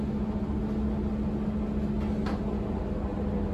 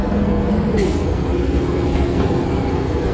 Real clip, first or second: first